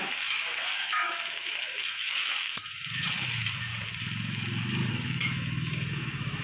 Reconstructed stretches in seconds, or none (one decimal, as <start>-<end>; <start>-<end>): 0.0-3.7; 4.9-6.4